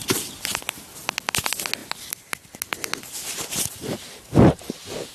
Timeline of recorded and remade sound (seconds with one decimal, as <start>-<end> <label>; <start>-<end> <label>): 0.0-5.1 recorded